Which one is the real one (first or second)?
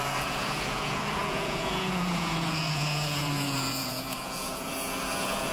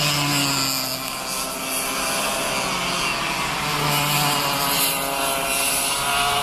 second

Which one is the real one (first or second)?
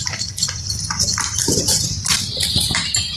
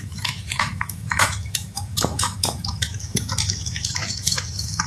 first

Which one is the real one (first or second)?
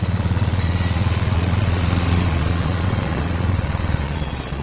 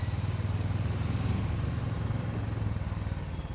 second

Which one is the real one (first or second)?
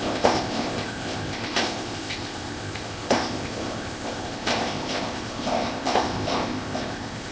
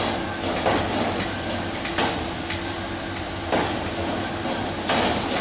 second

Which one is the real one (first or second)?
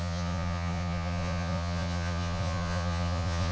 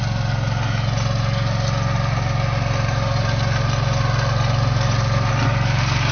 second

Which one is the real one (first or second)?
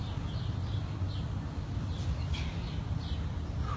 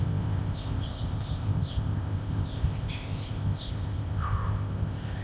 first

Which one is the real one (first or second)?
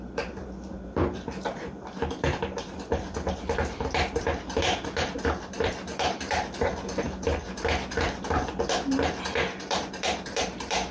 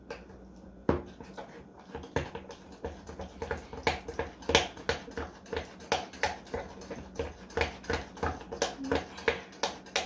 second